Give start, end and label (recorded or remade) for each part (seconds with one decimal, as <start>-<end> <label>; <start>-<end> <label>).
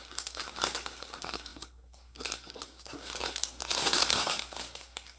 0.0-5.2 remade